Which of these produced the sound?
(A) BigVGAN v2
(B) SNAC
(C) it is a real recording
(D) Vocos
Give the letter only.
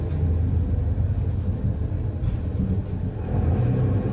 C